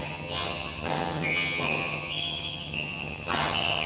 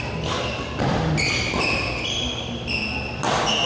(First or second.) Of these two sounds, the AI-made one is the first